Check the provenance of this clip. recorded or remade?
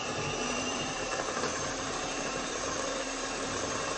remade